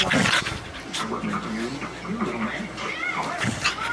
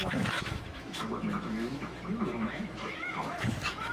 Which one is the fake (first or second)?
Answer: second